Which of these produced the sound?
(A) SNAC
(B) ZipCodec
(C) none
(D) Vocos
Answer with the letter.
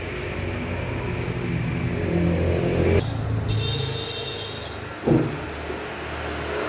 C